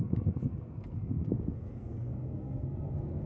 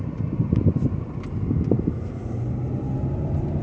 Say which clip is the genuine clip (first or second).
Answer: second